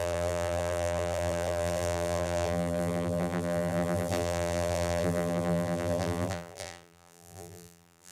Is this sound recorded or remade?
remade